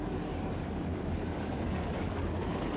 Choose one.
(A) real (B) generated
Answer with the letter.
B